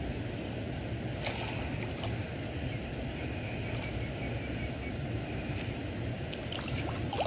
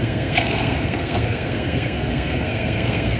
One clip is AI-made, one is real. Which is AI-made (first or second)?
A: second